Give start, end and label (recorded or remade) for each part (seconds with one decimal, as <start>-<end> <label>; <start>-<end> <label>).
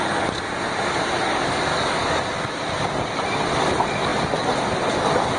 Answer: 0.0-1.7 recorded; 1.7-2.2 remade; 2.2-5.4 recorded